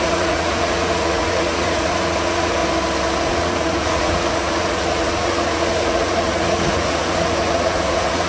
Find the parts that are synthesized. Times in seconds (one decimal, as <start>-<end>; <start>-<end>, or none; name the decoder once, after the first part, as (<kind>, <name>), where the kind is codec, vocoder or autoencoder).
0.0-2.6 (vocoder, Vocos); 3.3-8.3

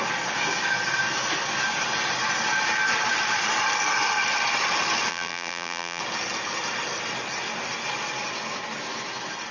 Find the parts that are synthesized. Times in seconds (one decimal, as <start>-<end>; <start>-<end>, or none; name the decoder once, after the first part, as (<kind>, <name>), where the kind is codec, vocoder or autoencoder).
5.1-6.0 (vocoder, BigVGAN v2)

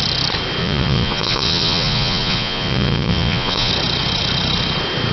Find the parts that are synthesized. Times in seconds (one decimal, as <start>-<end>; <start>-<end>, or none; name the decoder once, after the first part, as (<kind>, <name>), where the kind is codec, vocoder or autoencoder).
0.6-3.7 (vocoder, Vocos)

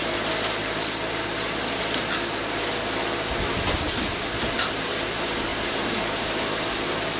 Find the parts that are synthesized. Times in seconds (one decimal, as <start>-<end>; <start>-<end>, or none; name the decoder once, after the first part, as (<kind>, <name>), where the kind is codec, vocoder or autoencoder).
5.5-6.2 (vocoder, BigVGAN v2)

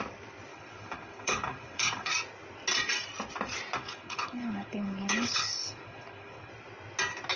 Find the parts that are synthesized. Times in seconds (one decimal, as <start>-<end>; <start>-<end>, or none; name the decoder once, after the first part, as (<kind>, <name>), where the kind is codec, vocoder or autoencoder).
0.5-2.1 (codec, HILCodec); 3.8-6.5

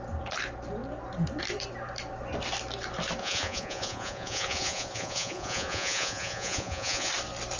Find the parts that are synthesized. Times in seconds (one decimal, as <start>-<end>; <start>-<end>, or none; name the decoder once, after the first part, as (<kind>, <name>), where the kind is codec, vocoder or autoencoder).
3.2-7.1 (vocoder, Vocos)

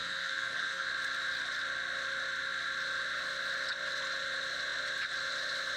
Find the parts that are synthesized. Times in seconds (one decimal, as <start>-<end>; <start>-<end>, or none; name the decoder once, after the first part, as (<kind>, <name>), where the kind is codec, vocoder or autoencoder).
0.0-0.9 (codec, SNAC)